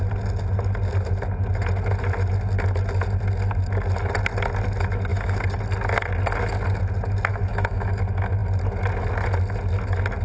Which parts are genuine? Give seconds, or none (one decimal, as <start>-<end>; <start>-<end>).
0.0-5.1; 5.6-7.3; 7.9-10.2